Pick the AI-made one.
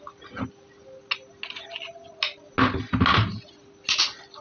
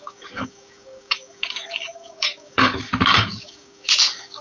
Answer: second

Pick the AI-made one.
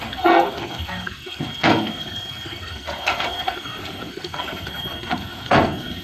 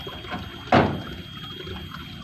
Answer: first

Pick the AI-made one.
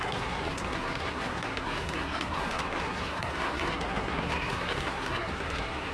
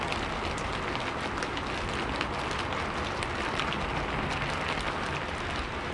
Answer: first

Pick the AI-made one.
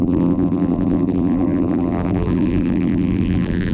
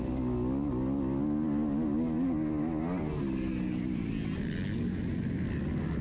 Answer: first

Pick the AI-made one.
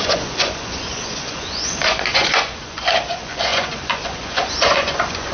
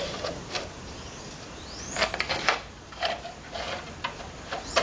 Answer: first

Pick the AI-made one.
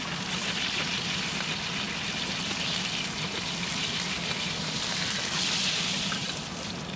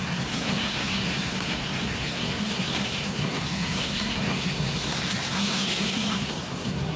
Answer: second